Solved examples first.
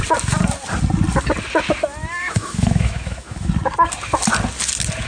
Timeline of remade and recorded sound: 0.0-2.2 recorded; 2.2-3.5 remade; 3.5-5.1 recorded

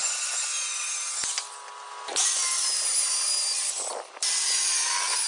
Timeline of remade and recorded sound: 0.0-5.3 recorded

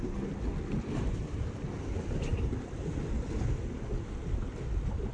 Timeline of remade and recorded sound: 0.0-5.1 recorded